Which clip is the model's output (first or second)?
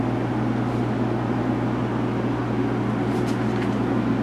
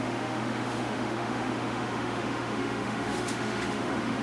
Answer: second